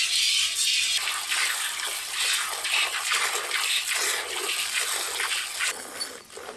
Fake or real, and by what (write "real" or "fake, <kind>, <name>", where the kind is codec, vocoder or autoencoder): real